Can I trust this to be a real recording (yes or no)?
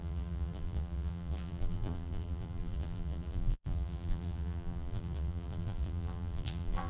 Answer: no